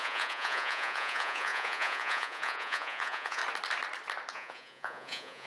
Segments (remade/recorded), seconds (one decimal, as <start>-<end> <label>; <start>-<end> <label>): 0.0-3.4 remade; 3.4-4.3 recorded; 4.3-5.5 remade